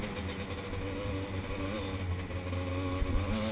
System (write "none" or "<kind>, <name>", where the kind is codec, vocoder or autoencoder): none